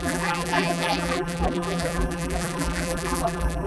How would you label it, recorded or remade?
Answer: remade